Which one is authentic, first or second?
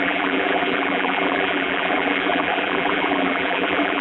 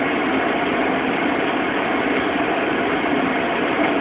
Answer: second